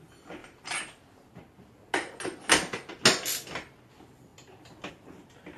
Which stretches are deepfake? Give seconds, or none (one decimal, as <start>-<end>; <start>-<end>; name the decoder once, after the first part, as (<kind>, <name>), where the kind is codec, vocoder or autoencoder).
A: 0.4-1.0 (vocoder, BigVGAN v2)